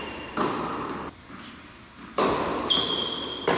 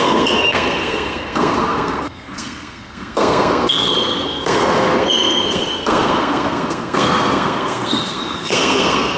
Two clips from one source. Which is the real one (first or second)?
first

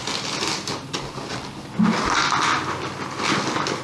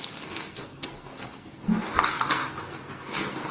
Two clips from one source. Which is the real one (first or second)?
first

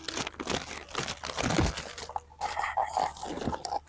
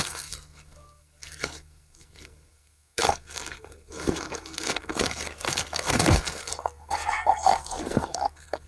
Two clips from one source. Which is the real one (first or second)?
first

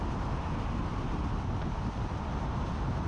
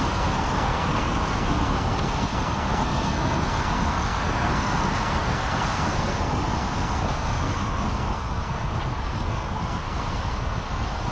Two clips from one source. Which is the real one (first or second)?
first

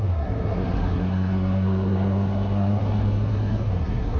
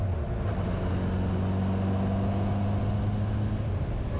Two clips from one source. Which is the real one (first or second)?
second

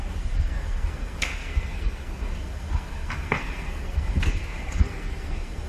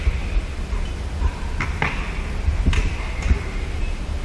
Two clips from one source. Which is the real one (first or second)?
second